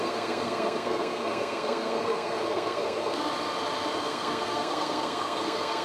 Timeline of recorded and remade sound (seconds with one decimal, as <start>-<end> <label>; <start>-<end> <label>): 0.0-3.3 remade; 3.3-4.0 recorded; 4.0-5.8 remade